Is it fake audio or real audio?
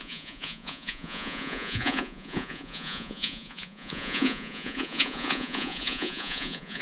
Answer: fake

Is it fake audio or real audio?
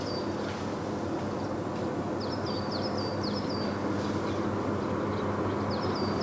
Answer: real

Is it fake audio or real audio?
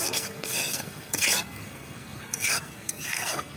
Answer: fake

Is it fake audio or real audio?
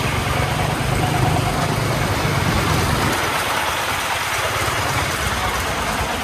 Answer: fake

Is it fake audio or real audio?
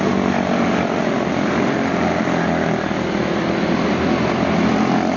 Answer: real